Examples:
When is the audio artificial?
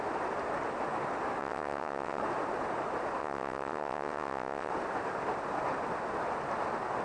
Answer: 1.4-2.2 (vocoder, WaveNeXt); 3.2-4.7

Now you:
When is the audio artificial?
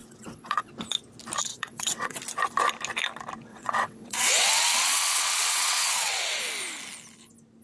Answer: 0.0-0.7 (vocoder, WaveNeXt); 1.5-2.2; 3.5-6.4